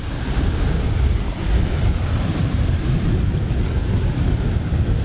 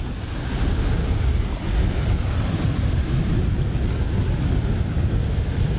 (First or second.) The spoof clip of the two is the first